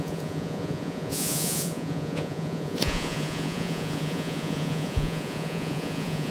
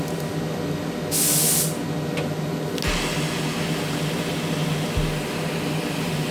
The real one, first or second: second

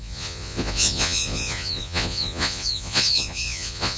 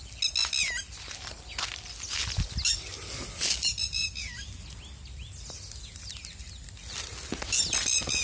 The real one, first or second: second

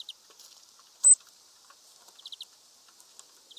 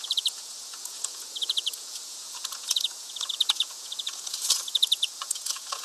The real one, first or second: first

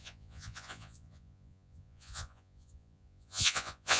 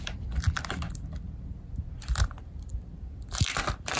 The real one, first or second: second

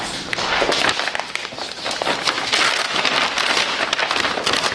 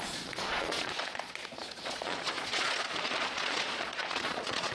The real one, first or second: first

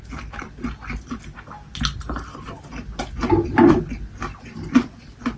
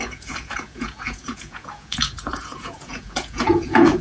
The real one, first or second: first